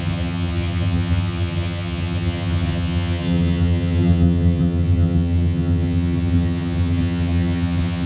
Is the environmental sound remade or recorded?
remade